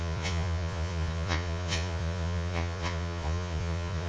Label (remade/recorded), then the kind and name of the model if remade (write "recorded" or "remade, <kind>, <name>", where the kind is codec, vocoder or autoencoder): remade, vocoder, Vocos